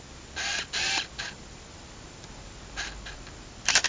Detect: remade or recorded remade